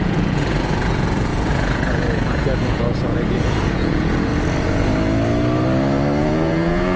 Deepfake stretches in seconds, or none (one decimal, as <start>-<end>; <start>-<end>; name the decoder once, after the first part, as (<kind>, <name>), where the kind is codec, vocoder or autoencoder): 0.0-4.3 (vocoder, Vocos); 6.2-7.0